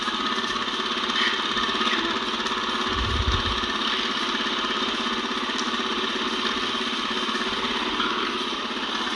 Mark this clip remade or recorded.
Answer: recorded